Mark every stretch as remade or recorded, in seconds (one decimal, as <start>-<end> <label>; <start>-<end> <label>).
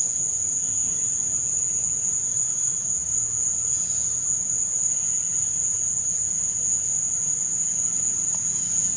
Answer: 0.0-9.0 remade